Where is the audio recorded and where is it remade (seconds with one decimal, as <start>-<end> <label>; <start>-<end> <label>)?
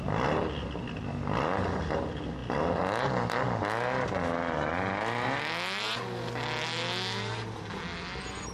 0.0-8.5 recorded